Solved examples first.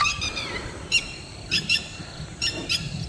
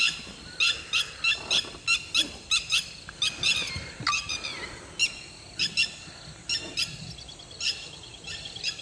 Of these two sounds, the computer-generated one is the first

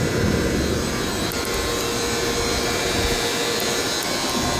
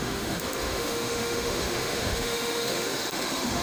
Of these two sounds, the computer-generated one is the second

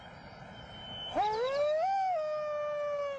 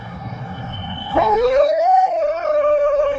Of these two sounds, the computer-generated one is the second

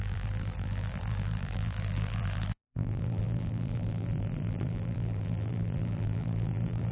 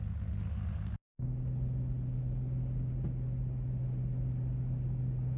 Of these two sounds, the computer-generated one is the first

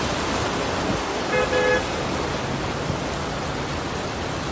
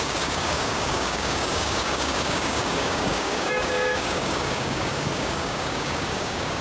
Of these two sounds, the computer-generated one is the second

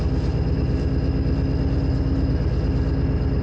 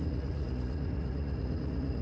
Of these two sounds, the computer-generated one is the second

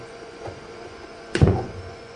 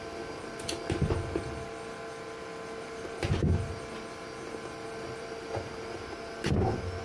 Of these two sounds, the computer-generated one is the first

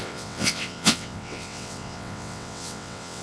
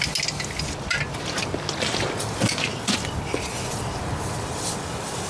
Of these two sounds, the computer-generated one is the first